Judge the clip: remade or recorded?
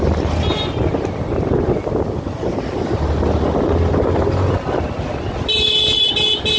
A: recorded